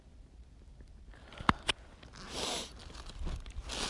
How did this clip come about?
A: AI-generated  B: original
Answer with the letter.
B